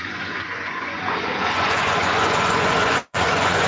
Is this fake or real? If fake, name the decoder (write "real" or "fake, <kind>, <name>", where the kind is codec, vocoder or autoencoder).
fake, vocoder, Vocos